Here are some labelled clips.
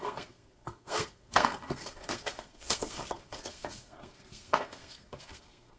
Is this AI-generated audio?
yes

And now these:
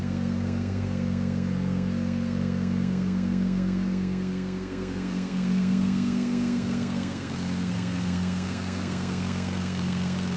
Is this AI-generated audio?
yes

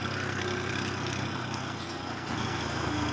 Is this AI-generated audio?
yes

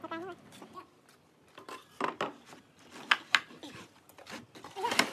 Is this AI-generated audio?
no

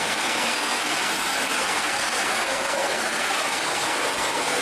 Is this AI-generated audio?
yes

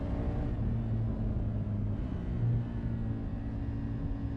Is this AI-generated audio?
no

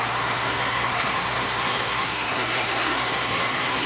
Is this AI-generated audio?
yes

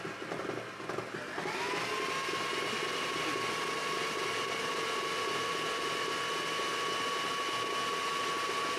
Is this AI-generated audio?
no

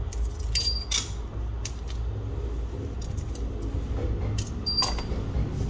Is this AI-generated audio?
no